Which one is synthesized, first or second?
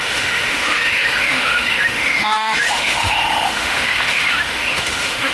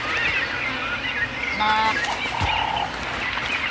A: first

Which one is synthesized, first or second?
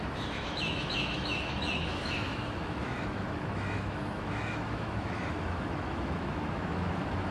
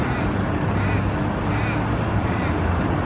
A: first